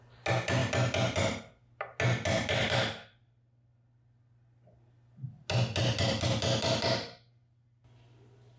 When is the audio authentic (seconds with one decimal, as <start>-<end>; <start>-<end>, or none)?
0.0-8.6